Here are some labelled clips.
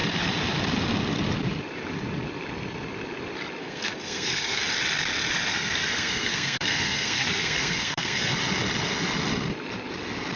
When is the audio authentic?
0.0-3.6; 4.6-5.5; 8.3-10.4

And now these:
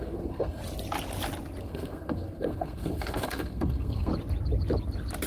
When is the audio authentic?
0.6-1.6; 4.1-5.3

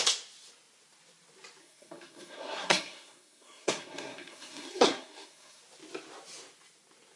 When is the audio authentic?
0.0-1.6; 5.6-7.2

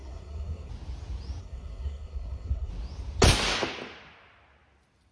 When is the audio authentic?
0.7-1.4; 2.7-5.1

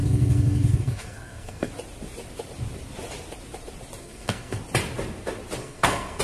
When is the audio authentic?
1.7-4.0; 4.6-5.6